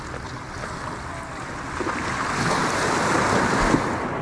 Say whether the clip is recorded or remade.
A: recorded